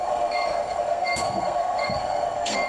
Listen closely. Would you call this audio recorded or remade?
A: remade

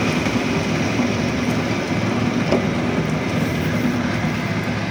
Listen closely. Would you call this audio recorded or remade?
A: recorded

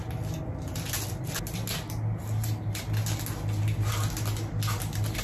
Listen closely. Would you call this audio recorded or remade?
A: recorded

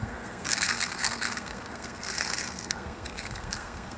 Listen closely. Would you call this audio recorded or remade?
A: remade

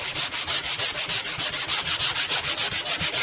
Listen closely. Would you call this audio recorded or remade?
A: recorded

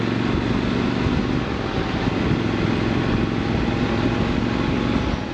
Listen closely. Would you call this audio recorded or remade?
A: recorded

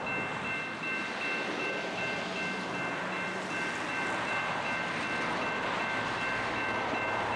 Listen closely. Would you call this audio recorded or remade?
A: recorded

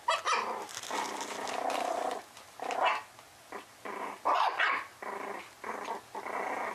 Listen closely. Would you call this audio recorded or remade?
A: recorded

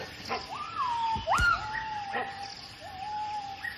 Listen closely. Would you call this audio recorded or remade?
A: recorded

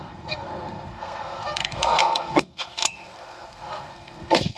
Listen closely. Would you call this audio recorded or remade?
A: remade